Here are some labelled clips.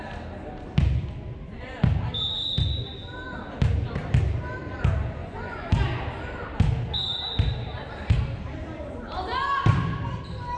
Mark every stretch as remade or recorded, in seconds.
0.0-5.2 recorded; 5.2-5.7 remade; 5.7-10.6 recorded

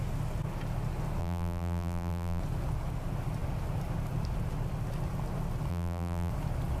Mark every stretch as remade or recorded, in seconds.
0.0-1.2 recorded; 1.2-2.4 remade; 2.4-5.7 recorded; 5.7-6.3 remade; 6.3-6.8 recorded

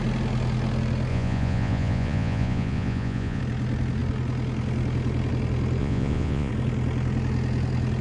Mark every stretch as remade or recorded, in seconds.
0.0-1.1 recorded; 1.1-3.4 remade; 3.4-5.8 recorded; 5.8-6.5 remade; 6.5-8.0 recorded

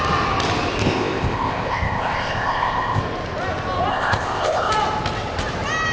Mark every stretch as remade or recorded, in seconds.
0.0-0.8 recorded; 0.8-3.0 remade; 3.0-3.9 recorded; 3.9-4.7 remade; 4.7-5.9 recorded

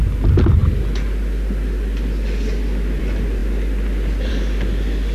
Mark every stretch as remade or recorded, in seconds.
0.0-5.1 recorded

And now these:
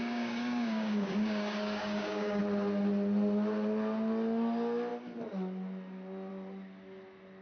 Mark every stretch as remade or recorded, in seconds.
0.0-2.4 remade; 2.4-7.4 recorded

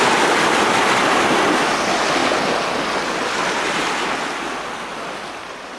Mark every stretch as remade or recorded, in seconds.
0.0-5.8 recorded

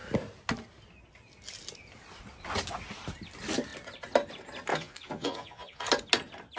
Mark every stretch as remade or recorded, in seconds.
0.0-4.7 recorded; 4.7-5.9 remade; 5.9-6.6 recorded